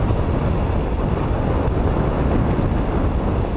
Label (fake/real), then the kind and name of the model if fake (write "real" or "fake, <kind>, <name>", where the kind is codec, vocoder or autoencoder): real